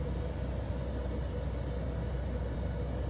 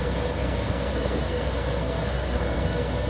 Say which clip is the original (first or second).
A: first